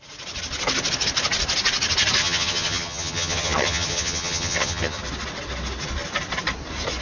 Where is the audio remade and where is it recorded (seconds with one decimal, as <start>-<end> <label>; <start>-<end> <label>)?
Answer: 0.0-2.2 recorded; 2.2-5.0 remade; 5.0-7.0 recorded

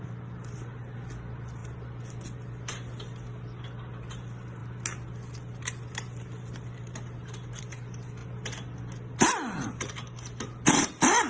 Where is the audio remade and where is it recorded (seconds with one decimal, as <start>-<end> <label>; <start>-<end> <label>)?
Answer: 0.0-11.3 recorded

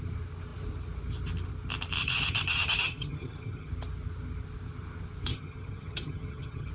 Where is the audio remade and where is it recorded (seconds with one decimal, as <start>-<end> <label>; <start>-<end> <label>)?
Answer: 0.0-2.0 recorded; 2.0-3.7 remade; 3.7-5.3 recorded; 5.3-6.7 remade

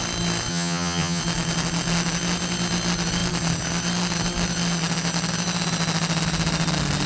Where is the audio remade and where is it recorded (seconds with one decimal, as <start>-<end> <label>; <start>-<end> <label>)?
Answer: 0.0-0.5 recorded; 0.5-1.2 remade; 1.2-7.1 recorded

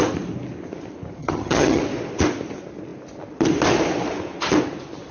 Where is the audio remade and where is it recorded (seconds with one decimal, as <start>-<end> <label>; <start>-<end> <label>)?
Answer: 0.0-1.2 recorded; 1.2-1.8 remade; 1.8-5.1 recorded

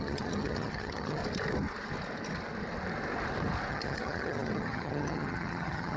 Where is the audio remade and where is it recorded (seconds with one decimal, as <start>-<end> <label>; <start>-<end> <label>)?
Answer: 0.0-1.2 remade; 1.2-3.7 recorded; 3.7-6.0 remade

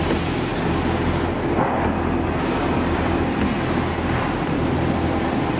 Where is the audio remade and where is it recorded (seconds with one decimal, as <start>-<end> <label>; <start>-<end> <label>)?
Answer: 0.0-5.6 recorded

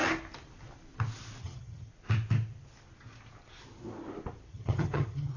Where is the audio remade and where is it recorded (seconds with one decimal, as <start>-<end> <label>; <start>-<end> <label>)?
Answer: 0.0-1.4 recorded; 1.4-1.9 remade; 1.9-4.5 recorded; 4.5-5.4 remade